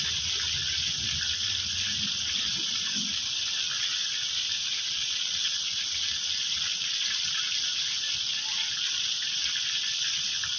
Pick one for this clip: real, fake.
real